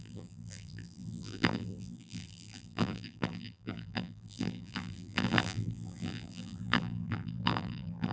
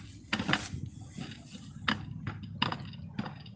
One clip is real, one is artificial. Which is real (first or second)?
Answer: second